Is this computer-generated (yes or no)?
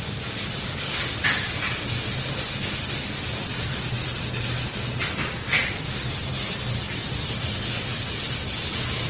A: no